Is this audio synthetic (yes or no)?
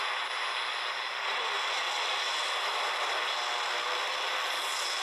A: no